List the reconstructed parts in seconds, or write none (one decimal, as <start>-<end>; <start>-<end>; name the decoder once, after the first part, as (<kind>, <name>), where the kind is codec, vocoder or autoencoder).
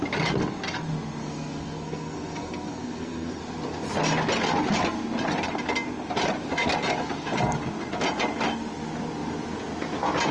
1.2-3.4 (codec, SNAC)